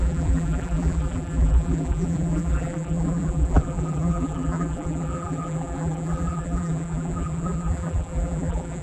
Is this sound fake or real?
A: fake